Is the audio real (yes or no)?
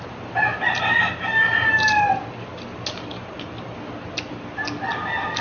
yes